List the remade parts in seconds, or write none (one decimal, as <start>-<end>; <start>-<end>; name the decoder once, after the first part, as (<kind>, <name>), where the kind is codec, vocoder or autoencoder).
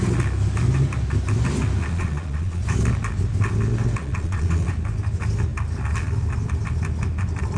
1.8-2.6 (vocoder, Vocos); 4.0-4.7